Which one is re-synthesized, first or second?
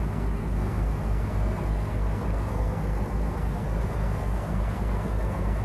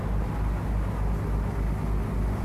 first